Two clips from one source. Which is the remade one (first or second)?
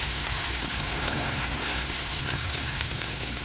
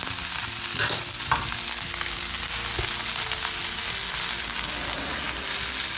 first